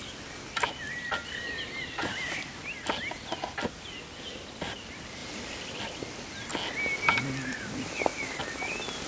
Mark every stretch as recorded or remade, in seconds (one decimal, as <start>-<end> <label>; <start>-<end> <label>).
0.0-9.1 recorded